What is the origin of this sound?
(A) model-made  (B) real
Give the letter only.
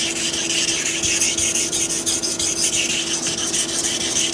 B